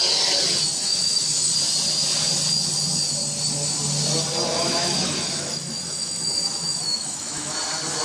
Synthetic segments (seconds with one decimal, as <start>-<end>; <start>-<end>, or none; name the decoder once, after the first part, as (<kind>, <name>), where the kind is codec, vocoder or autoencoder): 0.8-1.5 (autoencoder, DAC-VAE); 4.5-7.6